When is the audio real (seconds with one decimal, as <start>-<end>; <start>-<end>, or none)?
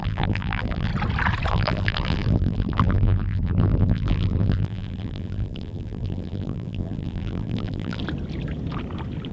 0.9-1.5; 8.0-9.3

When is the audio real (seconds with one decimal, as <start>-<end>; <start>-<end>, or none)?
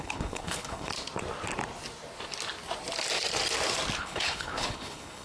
0.9-4.0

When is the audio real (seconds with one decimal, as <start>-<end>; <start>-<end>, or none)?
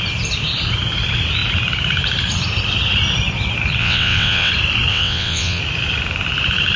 0.0-3.8; 4.5-4.9; 5.6-6.8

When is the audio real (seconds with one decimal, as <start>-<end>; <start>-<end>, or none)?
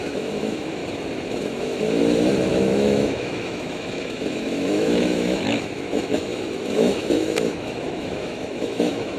0.8-1.3; 2.0-2.5